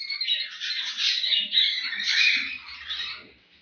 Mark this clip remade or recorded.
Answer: remade